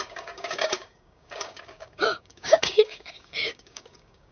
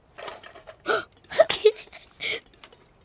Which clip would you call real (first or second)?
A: second